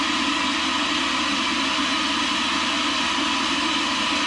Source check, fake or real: real